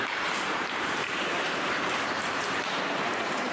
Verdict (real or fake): fake